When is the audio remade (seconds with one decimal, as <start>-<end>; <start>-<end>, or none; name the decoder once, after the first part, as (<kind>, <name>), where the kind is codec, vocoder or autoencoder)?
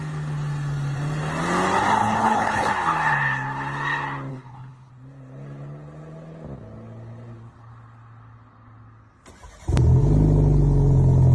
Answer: 2.0-2.7 (codec, HILCodec); 4.3-4.9